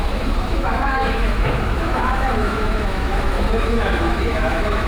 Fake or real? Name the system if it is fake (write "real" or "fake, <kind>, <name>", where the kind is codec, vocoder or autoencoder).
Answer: fake, autoencoder, DAC-VAE